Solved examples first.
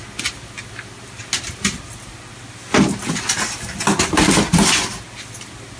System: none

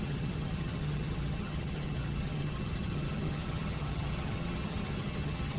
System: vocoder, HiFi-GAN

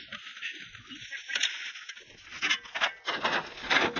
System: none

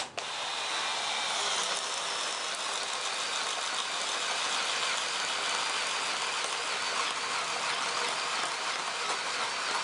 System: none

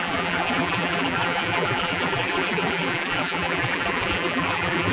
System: vocoder, BigVGAN v2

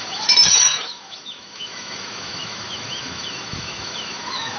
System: autoencoder, DAC-VAE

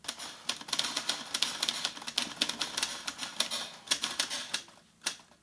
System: none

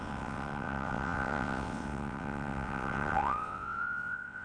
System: vocoder, WaveNeXt